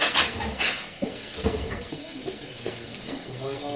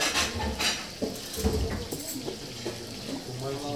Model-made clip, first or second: first